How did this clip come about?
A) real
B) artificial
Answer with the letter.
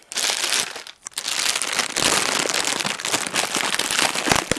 A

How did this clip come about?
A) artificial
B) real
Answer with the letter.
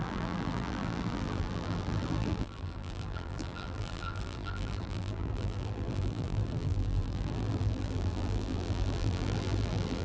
A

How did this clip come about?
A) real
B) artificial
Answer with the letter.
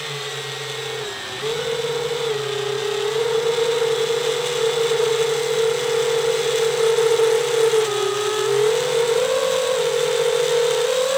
A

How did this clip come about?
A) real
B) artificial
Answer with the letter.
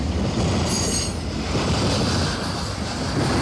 A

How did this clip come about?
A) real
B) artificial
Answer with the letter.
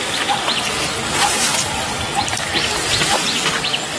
A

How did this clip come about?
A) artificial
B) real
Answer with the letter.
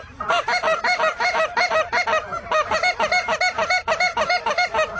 B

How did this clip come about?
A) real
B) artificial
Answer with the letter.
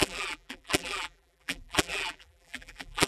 B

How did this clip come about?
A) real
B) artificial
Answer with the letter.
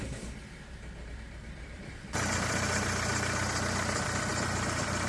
B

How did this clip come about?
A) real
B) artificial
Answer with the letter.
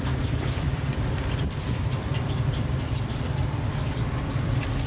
B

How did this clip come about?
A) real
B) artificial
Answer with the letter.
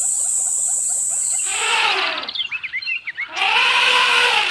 B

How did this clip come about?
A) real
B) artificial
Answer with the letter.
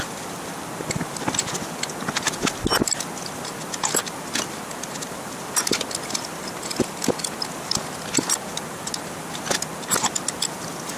A